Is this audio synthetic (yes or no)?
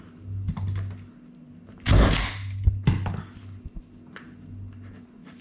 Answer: no